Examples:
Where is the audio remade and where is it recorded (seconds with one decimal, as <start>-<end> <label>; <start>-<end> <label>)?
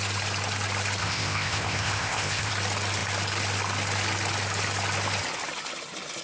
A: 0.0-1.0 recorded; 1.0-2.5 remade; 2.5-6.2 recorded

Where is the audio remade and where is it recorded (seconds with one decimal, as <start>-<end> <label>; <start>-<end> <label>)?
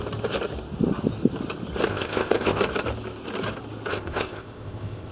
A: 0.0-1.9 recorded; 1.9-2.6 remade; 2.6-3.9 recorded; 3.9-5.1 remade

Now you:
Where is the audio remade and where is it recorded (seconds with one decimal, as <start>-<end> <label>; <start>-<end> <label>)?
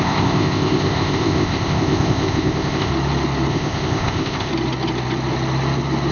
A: 0.0-2.9 remade; 2.9-3.5 recorded; 3.5-4.5 remade; 4.5-6.1 recorded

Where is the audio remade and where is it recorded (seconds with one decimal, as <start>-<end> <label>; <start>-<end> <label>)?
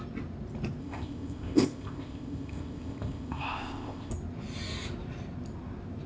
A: 0.0-0.8 recorded; 0.8-4.1 remade; 4.1-6.1 recorded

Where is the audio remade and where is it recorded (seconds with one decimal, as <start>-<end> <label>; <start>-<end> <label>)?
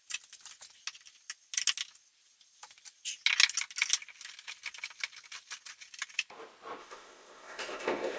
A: 0.0-6.8 recorded; 6.8-8.2 remade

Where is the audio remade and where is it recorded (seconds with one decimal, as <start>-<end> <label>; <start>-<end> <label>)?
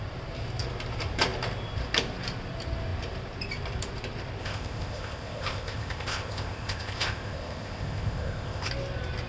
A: 0.0-4.4 recorded; 4.4-8.7 remade; 8.7-9.3 recorded